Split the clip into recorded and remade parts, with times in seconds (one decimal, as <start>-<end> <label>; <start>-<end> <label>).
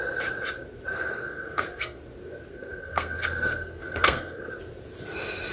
0.0-0.9 recorded; 0.9-2.0 remade; 2.0-2.5 recorded; 2.5-4.5 remade; 4.5-5.5 recorded